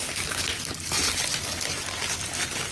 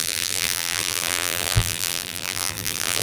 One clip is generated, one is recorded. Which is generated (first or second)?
second